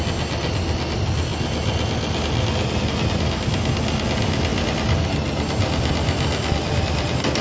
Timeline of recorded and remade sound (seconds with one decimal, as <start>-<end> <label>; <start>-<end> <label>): 0.0-7.4 recorded